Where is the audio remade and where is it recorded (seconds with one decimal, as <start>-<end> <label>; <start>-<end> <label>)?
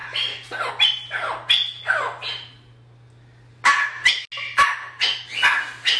0.0-6.0 recorded